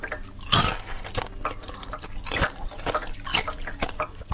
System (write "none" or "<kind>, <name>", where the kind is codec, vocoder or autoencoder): none